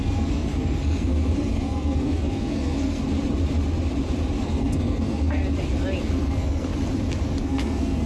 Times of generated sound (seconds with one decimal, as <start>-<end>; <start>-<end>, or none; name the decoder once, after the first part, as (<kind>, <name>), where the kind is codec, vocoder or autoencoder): 0.0-3.0 (codec, SNAC); 4.4-5.4; 6.0-6.7; 7.4-8.1